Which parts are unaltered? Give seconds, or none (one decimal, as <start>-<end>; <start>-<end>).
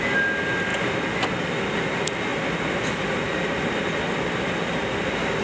0.0-5.4